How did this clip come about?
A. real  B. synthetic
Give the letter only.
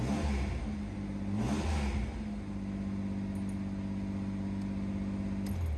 A